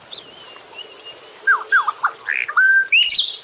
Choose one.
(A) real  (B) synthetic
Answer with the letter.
A